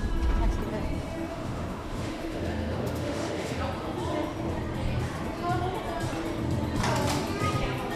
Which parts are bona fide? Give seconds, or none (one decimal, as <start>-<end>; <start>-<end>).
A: 0.0-1.3; 3.6-8.0